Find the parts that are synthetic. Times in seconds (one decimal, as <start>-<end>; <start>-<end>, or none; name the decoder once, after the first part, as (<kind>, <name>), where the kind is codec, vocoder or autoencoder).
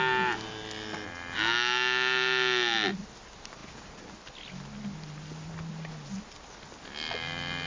none